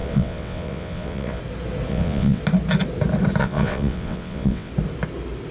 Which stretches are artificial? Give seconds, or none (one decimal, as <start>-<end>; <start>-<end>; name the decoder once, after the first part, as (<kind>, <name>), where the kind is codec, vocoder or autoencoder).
0.0-1.4 (vocoder, WaveNeXt); 1.9-2.4; 3.4-4.7